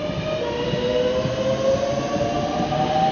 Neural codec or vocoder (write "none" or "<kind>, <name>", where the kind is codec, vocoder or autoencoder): none